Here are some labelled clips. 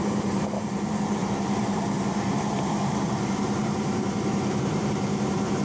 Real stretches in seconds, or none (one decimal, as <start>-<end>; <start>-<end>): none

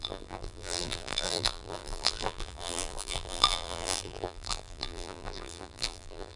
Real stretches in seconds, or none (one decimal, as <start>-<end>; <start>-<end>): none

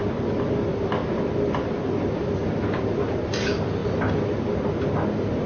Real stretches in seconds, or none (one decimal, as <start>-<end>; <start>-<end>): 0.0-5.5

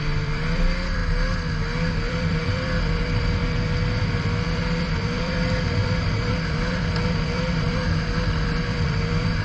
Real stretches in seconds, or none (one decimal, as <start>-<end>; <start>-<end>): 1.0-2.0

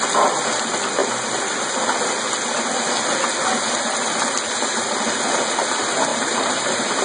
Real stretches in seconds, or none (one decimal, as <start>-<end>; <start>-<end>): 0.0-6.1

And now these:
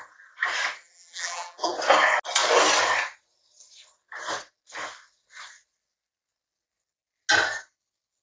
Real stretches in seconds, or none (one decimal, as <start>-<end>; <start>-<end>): 0.0-0.8; 1.7-8.2

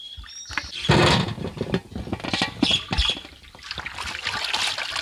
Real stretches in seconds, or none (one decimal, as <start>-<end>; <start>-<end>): 0.0-5.0

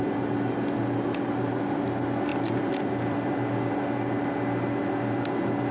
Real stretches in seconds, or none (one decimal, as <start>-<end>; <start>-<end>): 0.0-2.3; 3.6-5.7